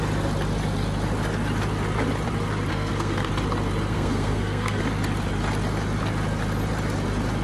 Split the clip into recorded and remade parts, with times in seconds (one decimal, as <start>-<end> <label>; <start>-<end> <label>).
0.0-2.7 recorded; 2.7-3.3 remade; 3.3-3.9 recorded; 3.9-4.8 remade; 4.8-7.4 recorded